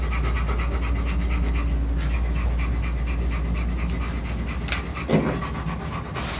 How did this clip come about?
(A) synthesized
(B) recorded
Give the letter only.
B